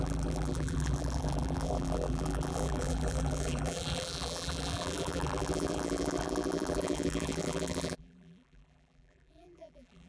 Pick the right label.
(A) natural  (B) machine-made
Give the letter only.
B